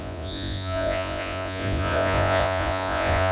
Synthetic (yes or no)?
yes